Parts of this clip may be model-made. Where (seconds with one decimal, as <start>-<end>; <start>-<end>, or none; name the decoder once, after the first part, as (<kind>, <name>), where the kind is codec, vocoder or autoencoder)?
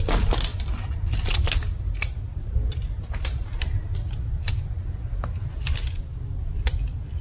none